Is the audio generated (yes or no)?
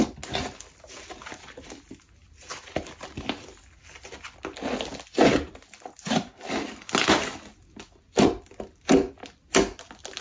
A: no